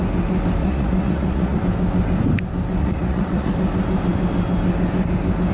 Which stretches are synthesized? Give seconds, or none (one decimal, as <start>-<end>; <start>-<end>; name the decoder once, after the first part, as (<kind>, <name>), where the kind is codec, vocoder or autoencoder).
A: 0.6-1.6 (vocoder, Vocos); 2.8-3.5